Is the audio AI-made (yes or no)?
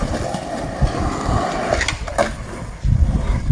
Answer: no